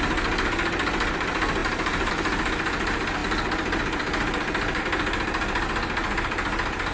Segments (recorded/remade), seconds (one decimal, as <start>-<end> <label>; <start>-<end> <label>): 0.0-1.6 recorded; 1.6-2.1 remade; 2.1-6.9 recorded